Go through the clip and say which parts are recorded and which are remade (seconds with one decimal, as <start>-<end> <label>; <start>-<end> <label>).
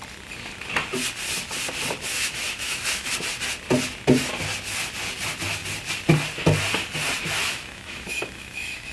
0.0-2.1 recorded; 2.1-3.1 remade; 3.1-7.4 recorded; 7.4-8.9 remade